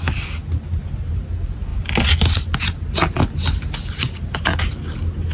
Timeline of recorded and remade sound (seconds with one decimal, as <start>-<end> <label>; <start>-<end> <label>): 0.0-5.3 recorded